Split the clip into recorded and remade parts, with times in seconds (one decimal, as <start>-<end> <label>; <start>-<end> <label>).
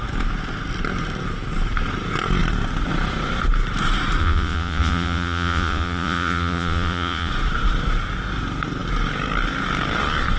0.0-4.2 recorded; 4.2-7.3 remade; 7.3-10.4 recorded